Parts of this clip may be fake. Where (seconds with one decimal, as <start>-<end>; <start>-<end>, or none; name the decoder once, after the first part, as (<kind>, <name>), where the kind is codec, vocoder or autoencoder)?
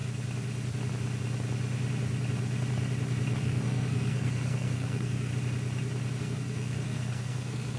3.4-5.3 (codec, SNAC); 6.2-7.8